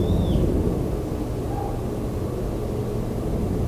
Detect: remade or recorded recorded